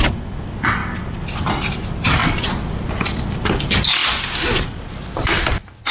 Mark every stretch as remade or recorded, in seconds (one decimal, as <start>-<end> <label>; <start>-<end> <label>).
0.0-5.9 recorded